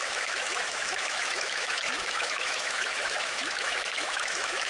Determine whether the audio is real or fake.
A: fake